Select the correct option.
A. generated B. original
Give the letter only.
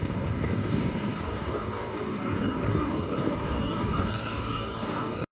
A